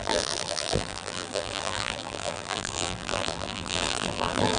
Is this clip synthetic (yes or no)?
yes